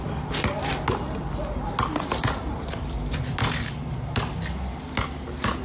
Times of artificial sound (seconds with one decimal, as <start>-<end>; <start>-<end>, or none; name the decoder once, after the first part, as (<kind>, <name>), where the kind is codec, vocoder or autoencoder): none